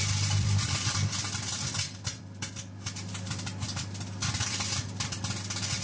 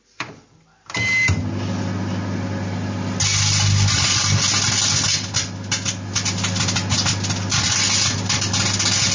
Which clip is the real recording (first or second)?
second